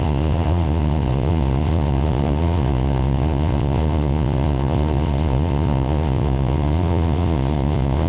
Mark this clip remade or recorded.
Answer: remade